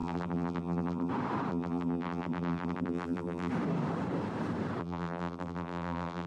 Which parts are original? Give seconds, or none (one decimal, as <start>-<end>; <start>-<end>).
1.1-1.5; 3.5-4.8